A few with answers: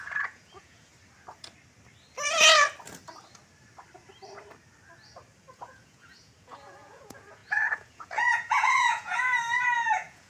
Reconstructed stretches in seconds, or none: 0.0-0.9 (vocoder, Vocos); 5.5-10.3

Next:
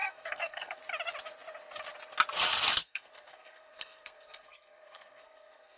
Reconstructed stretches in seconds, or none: 0.0-0.8 (codec, SNAC); 2.8-5.8